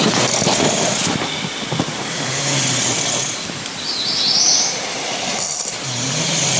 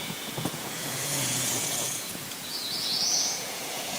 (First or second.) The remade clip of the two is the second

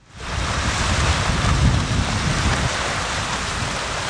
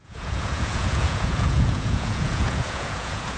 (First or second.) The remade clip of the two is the second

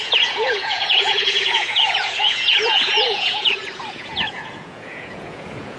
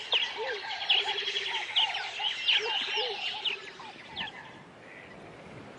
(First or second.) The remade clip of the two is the first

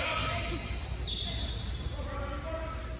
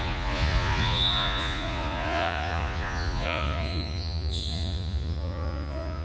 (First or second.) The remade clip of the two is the second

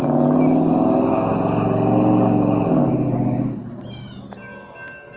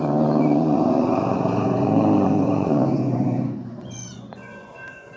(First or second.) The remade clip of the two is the second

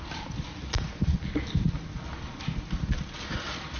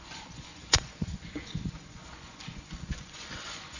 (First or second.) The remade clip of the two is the second